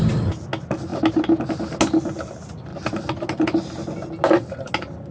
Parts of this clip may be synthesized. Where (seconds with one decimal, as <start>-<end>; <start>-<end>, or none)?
none